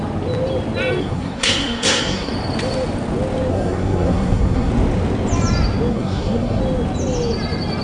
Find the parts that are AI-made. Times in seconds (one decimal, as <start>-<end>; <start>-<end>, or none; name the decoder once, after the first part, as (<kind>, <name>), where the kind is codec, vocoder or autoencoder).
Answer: 1.0-2.3 (codec, SNAC); 3.5-4.7; 5.9-6.6